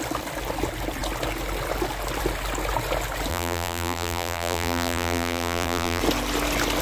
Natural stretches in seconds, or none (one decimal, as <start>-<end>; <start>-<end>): 0.0-3.3; 6.0-6.8